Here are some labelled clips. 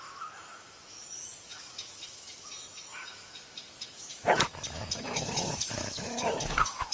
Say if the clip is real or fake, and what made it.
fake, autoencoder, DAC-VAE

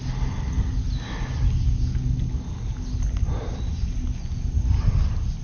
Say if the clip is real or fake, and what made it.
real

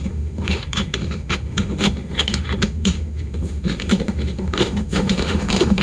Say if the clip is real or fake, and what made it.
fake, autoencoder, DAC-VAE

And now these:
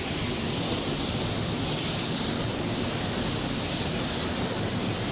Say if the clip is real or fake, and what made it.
real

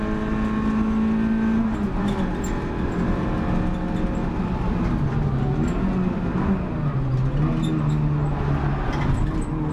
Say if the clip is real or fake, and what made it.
real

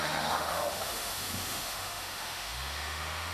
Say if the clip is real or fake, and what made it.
fake, autoencoder, DAC-VAE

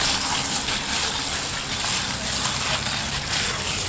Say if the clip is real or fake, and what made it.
real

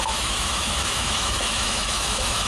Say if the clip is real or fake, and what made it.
fake, autoencoder, DAC-VAE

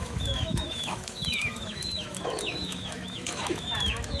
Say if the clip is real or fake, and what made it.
fake, autoencoder, DAC-VAE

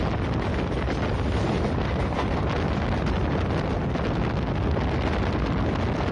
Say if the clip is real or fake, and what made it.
real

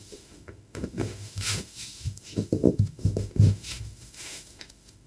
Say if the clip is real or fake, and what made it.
fake, autoencoder, DAC-VAE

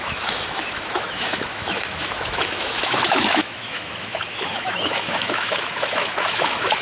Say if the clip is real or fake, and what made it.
fake, autoencoder, DAC-VAE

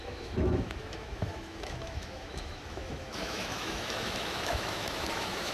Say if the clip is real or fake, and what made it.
fake, autoencoder, DAC-VAE